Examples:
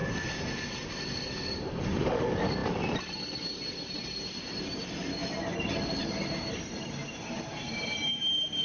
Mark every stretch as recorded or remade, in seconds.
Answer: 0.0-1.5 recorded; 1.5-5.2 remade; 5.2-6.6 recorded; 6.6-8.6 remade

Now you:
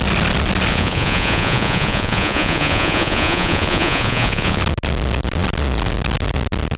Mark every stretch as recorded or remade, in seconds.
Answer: 0.0-0.7 recorded; 0.7-4.6 remade; 4.6-6.8 recorded

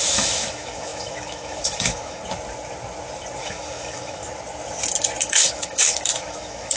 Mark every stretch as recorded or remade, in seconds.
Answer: 0.0-2.2 remade; 2.2-3.4 recorded; 3.4-4.2 remade; 4.2-5.2 recorded; 5.2-6.8 remade

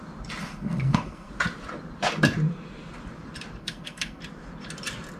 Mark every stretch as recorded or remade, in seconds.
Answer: 0.0-0.4 recorded; 0.4-1.3 remade; 1.3-3.6 recorded; 3.6-4.2 remade; 4.2-5.2 recorded

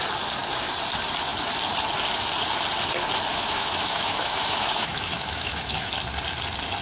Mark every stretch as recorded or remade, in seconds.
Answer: 0.0-3.3 recorded; 3.3-5.9 remade; 5.9-6.8 recorded

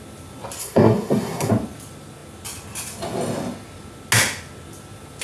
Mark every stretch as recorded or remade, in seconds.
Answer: 0.0-0.6 recorded; 0.6-1.5 remade; 1.5-5.2 recorded

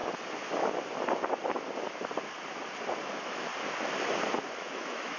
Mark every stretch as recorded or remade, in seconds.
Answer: 0.0-3.1 recorded; 3.1-3.5 remade; 3.5-4.5 recorded; 4.5-5.2 remade